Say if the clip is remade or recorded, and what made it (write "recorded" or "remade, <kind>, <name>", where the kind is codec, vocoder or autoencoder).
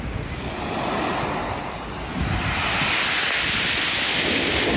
recorded